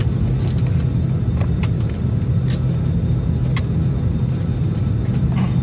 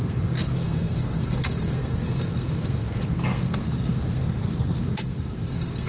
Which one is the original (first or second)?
first